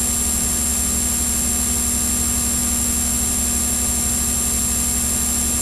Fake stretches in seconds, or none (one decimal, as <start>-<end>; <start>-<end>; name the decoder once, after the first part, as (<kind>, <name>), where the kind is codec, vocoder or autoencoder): none